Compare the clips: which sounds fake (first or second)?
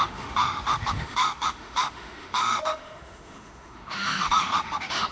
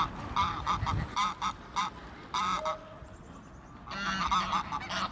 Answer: first